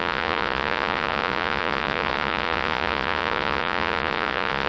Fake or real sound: fake